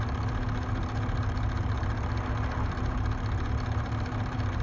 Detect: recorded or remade recorded